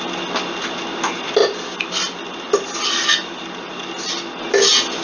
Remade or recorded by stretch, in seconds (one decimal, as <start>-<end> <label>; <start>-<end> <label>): 0.0-5.0 recorded